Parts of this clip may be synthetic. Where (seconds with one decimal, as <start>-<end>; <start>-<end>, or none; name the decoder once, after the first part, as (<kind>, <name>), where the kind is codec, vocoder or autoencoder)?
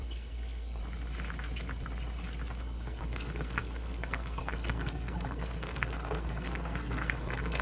0.0-0.8 (codec, SNAC); 2.6-7.6